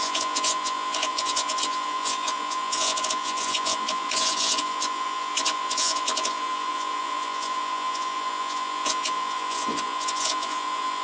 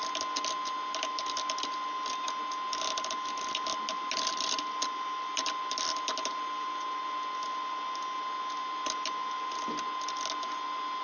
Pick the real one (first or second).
second